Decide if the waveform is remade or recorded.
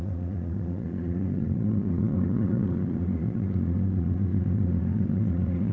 remade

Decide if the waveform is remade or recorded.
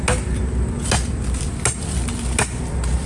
recorded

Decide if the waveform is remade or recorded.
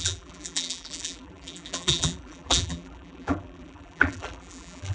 remade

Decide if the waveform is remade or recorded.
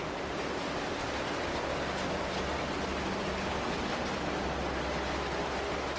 recorded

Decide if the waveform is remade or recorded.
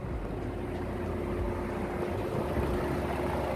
recorded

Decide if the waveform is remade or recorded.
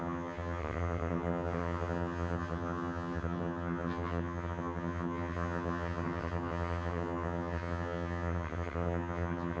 remade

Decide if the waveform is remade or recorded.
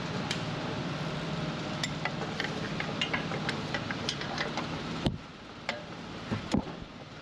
remade